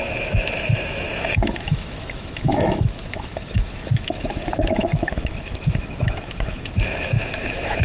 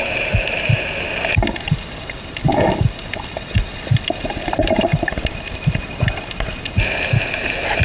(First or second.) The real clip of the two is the second